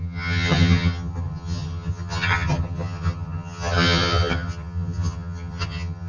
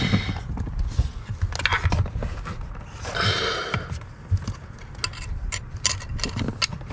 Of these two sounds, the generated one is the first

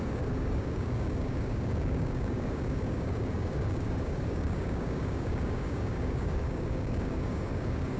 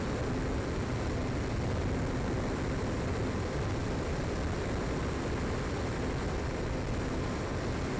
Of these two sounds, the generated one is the first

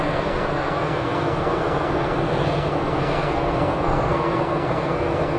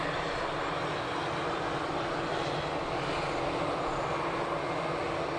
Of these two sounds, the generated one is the first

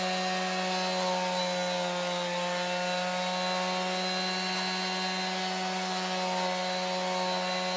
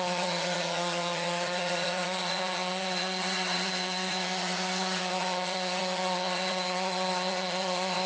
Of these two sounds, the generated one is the second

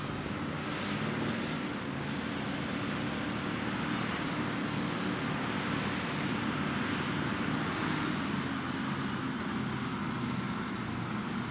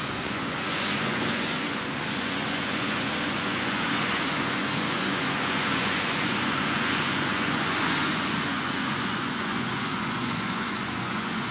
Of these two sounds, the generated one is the second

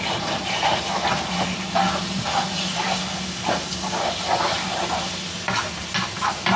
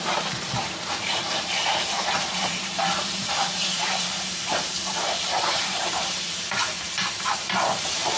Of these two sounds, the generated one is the second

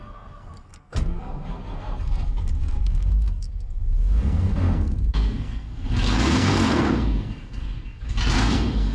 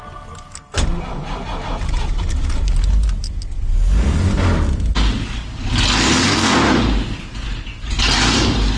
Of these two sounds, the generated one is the first